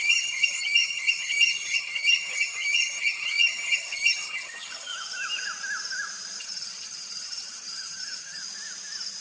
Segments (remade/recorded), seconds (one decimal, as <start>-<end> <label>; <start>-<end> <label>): 0.0-4.9 remade; 4.9-6.4 recorded; 6.4-8.4 remade; 8.4-9.2 recorded